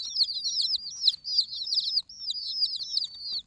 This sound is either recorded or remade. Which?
recorded